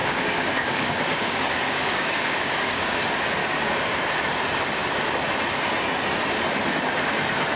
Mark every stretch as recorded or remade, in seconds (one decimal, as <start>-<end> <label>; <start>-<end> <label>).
0.0-3.0 remade; 3.0-3.4 recorded; 3.4-4.0 remade; 4.0-7.6 recorded